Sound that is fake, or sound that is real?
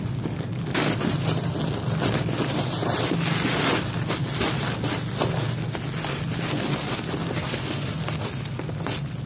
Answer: real